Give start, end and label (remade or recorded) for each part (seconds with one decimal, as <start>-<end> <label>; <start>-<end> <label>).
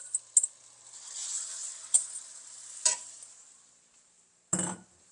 0.0-5.1 recorded